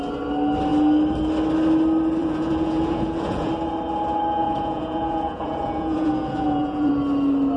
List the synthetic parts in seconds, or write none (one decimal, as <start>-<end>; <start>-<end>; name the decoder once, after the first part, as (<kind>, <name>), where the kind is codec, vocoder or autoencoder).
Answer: 2.2-3.5 (vocoder, Vocos); 4.4-6.9